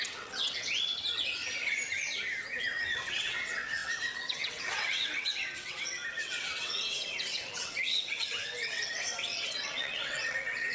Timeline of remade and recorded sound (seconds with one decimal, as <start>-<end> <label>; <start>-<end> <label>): 0.0-1.4 remade; 1.4-2.6 recorded; 2.6-10.7 remade